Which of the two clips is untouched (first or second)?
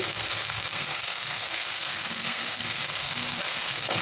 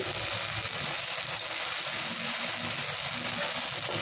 second